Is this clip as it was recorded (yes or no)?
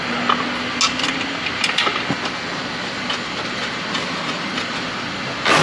yes